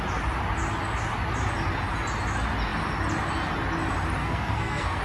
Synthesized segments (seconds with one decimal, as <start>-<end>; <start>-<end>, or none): 4.2-5.0